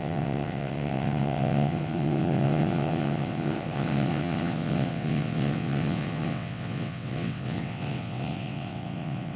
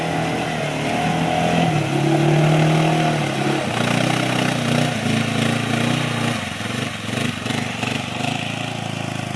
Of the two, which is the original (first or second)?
second